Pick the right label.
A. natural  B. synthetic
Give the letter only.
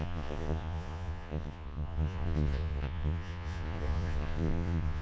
B